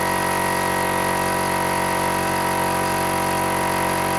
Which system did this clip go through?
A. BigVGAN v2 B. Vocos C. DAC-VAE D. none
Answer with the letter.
D